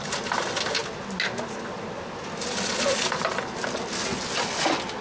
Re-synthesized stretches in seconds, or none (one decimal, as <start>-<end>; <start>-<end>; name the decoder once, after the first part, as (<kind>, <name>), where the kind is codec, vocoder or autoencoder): none